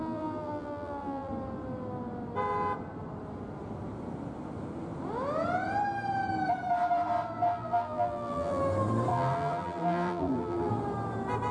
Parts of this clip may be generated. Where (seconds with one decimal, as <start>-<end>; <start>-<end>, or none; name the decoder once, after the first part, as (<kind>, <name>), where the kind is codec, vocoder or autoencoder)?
0.0-1.3 (vocoder, BigVGAN v2); 7.5-8.6; 9.1-10.7